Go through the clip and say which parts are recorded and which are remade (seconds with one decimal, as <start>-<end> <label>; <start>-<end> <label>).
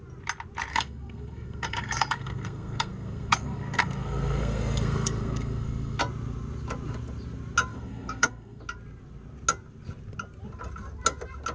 0.0-0.7 recorded; 0.7-6.0 remade; 6.0-7.7 recorded; 7.7-8.6 remade; 8.6-11.5 recorded